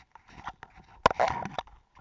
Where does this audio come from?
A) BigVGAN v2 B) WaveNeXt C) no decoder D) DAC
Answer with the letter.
C